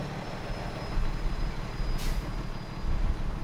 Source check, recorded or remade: recorded